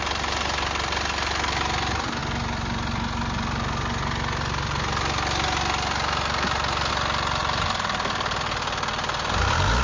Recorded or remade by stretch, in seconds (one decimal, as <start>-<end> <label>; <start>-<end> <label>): 0.0-9.8 recorded